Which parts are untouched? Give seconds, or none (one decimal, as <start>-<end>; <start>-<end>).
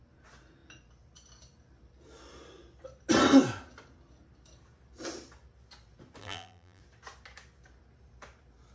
0.0-6.2; 6.8-8.7